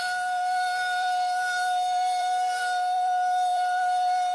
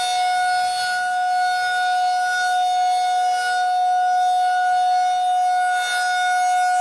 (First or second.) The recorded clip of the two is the second